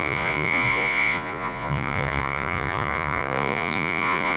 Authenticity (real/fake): fake